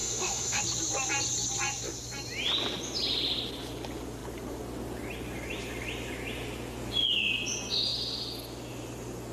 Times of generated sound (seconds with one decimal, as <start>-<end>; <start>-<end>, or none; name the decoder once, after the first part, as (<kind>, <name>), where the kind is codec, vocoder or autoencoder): 0.0-0.6 (autoencoder, DAC-VAE)